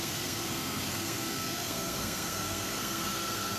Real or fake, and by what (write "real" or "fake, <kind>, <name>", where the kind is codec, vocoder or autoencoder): fake, codec, SNAC